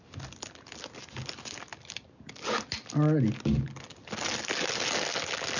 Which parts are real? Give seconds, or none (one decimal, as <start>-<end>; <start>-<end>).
0.0-5.6